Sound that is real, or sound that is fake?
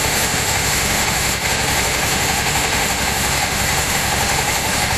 fake